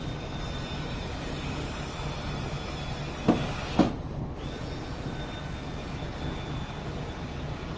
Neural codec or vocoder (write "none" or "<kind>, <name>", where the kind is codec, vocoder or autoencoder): none